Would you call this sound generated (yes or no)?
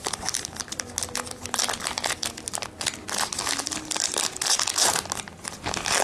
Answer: no